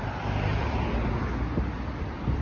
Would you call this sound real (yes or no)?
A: yes